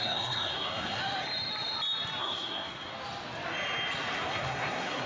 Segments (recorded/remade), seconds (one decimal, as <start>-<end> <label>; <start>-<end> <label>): 0.0-1.0 remade; 1.0-2.2 recorded; 2.2-2.9 remade; 2.9-4.3 recorded; 4.3-5.1 remade